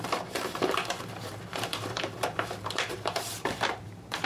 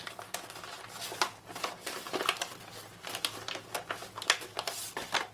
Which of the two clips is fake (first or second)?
first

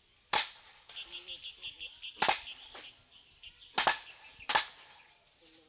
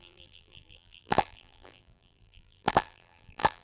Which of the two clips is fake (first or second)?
second